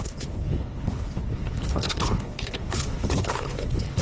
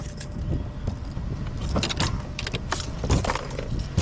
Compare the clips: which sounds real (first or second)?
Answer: second